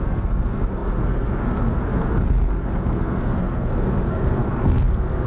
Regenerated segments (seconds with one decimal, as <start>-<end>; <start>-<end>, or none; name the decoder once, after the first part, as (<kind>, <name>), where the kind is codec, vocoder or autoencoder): 0.0-5.3 (codec, SNAC)